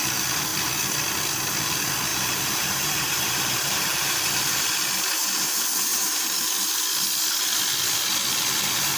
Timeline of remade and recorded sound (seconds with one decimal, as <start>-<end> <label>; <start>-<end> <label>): 0.0-2.1 recorded; 2.1-4.6 remade; 4.6-5.9 recorded; 5.9-6.5 remade; 6.5-9.0 recorded